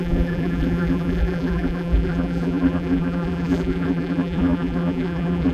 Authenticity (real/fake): fake